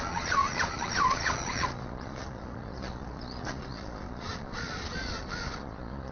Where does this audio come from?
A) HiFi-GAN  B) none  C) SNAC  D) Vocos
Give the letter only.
D